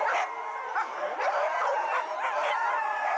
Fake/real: fake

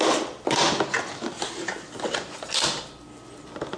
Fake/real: real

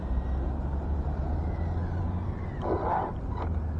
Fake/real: real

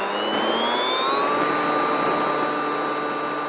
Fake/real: real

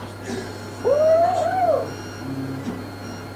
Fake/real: real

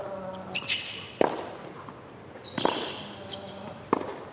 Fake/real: real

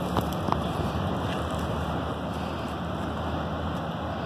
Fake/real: real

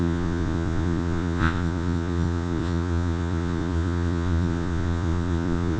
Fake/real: fake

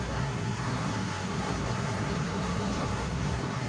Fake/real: fake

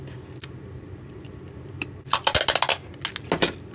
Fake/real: real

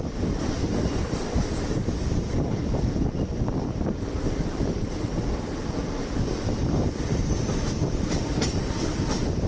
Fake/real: fake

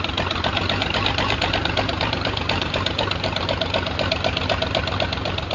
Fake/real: fake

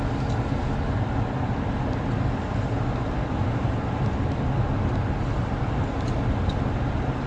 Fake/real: real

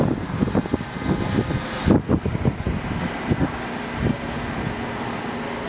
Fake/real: real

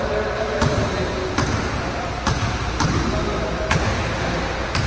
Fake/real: real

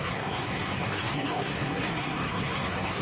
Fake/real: fake